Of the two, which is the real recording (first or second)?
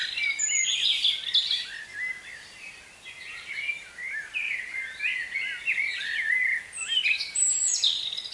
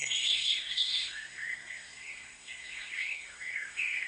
first